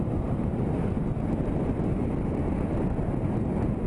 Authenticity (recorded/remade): recorded